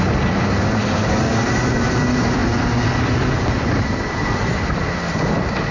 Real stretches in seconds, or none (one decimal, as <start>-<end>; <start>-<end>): 0.0-5.7